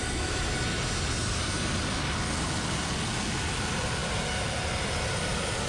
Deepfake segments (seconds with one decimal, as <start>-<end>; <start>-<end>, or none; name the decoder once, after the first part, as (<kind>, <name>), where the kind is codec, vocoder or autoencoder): none